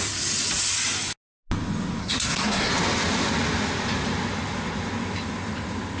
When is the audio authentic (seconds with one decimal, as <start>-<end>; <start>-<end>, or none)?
0.0-2.0; 2.7-6.0